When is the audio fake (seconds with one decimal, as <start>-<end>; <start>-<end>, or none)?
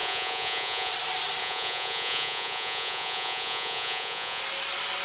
0.0-0.9; 1.4-4.4